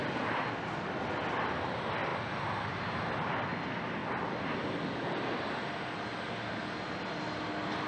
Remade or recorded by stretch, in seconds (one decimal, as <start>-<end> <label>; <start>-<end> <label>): 0.0-7.9 recorded